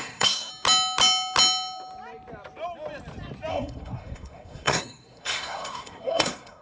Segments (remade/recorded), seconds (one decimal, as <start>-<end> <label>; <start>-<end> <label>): 0.0-0.5 remade; 0.5-3.5 recorded; 3.5-6.6 remade